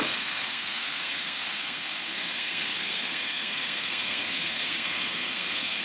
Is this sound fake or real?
fake